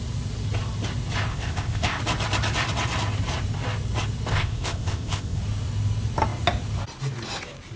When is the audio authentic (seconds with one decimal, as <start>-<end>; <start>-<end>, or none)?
0.0-1.3; 2.0-4.3; 5.4-7.8